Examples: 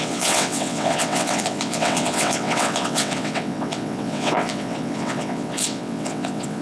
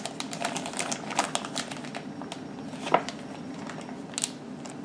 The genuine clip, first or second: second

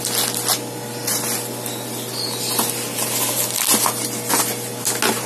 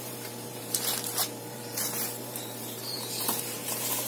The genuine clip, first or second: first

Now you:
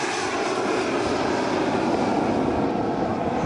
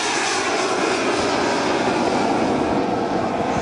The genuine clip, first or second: first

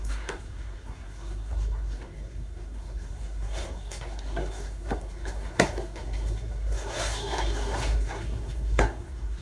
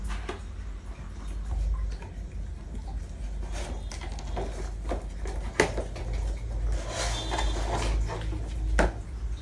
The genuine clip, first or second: second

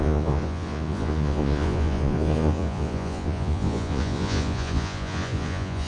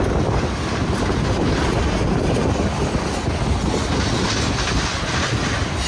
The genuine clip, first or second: second